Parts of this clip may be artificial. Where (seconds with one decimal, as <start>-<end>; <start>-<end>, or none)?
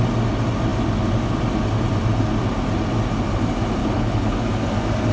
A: 3.8-4.4